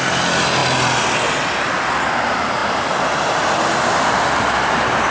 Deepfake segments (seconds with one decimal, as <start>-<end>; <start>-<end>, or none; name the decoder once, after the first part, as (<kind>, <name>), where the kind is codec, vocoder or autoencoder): none